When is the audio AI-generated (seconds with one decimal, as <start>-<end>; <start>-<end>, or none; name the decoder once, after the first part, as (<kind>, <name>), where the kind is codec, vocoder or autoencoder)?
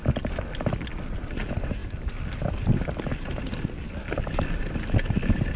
none